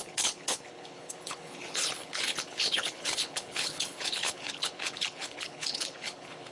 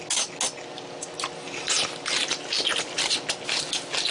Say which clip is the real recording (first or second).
second